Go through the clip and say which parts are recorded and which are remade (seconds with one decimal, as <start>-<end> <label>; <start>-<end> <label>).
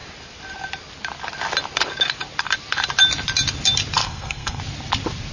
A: 0.0-4.0 recorded; 4.0-4.6 remade; 4.6-5.3 recorded